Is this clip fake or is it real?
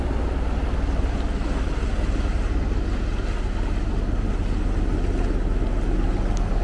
real